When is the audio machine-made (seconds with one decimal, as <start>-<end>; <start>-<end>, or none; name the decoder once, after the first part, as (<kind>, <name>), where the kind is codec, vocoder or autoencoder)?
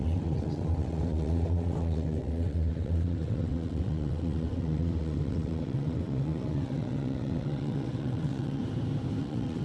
0.0-8.6 (vocoder, WaveNeXt); 9.2-9.6